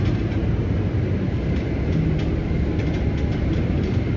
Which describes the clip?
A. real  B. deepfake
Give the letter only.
A